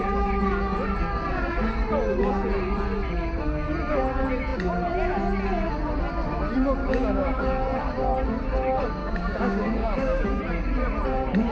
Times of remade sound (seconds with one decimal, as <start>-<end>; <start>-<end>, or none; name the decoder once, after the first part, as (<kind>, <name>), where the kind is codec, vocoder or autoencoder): 6.8-7.4 (codec, DAC); 9.0-10.4